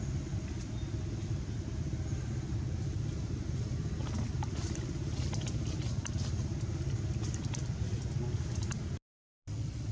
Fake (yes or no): no